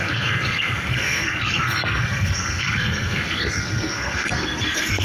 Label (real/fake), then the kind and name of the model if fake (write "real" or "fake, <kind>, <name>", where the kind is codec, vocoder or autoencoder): fake, codec, SNAC